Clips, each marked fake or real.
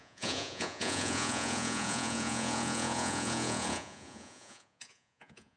fake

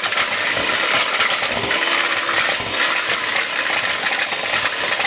real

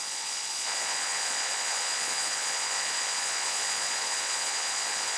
fake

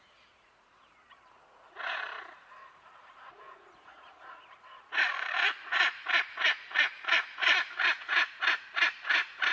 fake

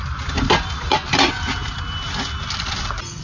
real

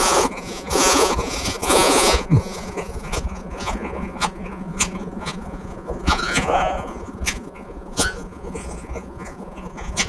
fake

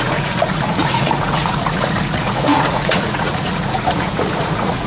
fake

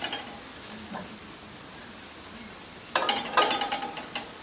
real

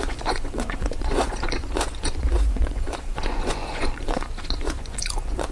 fake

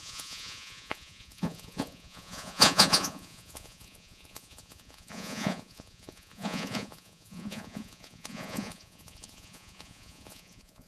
fake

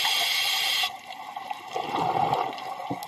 real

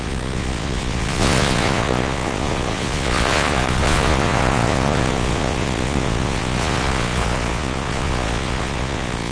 fake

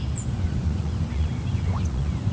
fake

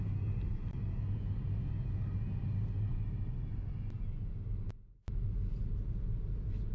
real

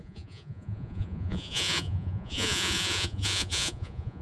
fake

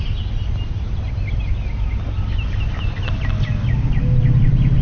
real